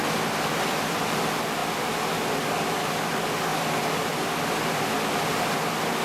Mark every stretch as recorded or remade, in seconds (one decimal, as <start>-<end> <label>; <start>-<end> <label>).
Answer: 0.0-1.2 remade; 1.2-6.0 recorded